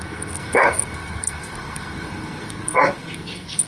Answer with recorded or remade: remade